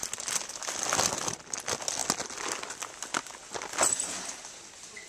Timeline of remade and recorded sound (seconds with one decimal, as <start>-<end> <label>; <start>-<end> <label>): 0.0-5.1 recorded